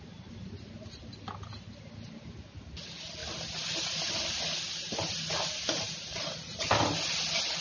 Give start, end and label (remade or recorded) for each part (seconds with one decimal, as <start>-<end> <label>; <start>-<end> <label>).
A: 0.0-7.6 recorded